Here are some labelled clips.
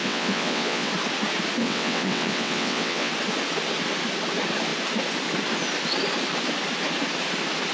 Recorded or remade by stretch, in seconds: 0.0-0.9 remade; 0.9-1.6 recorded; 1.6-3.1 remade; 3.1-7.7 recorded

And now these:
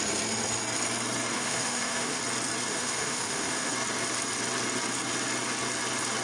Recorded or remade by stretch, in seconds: 0.0-1.3 recorded; 1.3-2.2 remade; 2.2-2.7 recorded; 2.7-3.7 remade; 3.7-6.2 recorded

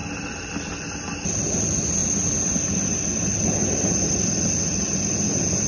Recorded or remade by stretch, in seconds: 0.0-5.7 recorded